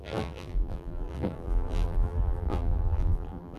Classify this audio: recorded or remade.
remade